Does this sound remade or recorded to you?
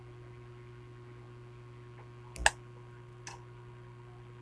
recorded